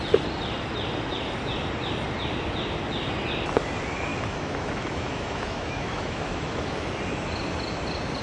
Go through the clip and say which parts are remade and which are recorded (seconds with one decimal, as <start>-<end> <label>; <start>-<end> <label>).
0.0-4.1 recorded; 4.1-6.9 remade; 6.9-8.2 recorded